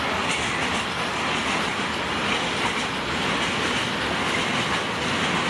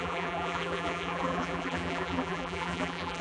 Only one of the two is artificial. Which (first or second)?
second